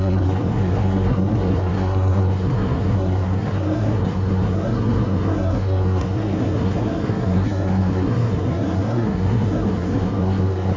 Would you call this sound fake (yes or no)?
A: yes